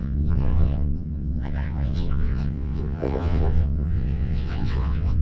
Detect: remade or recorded remade